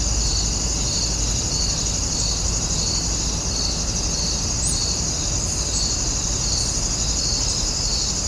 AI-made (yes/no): no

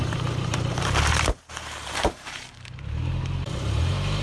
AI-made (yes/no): yes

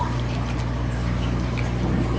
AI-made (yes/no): no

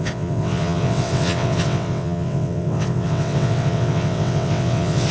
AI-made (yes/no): yes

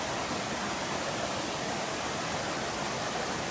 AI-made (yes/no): no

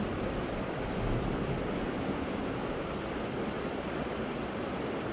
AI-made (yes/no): no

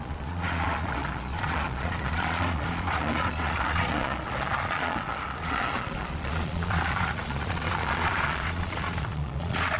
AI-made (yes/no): yes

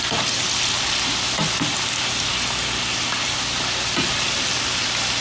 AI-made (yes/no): no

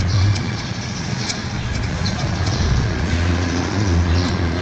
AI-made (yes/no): yes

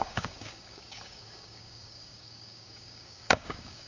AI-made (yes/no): yes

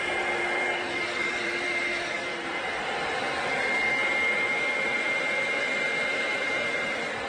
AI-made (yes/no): yes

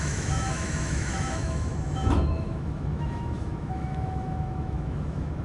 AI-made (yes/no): yes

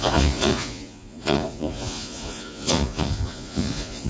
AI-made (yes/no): yes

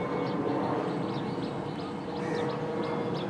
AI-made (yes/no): no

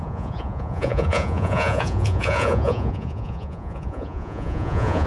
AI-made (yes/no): yes